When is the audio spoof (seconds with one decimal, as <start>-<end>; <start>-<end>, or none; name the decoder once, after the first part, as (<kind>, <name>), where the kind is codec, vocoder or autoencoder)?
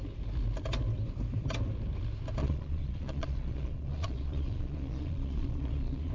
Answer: 2.4-6.1 (vocoder, Vocos)